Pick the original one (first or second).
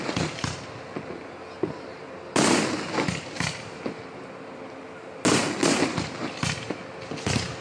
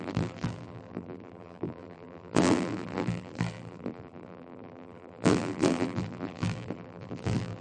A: first